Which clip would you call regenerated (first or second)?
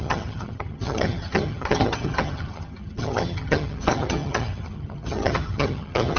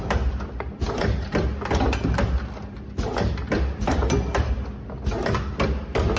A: first